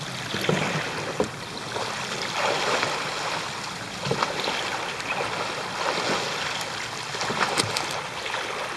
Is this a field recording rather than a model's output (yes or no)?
yes